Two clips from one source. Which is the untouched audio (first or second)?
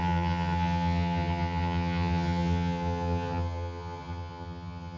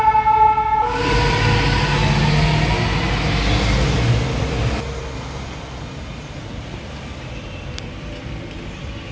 second